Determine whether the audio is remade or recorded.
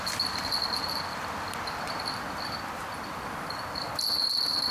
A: remade